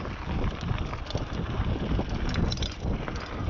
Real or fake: real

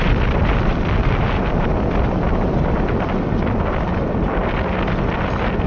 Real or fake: real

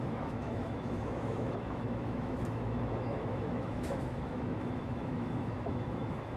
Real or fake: fake